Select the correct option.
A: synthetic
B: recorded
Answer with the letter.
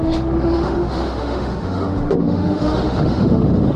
A